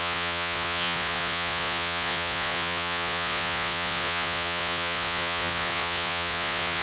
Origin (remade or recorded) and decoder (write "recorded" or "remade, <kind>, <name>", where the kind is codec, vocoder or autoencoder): remade, vocoder, Vocos